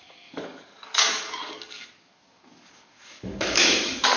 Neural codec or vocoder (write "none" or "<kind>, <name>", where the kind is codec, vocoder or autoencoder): codec, DAC